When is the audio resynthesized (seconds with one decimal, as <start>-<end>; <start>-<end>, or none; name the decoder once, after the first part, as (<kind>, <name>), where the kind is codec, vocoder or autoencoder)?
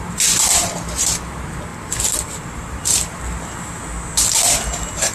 1.7-3.2 (vocoder, BigVGAN v2)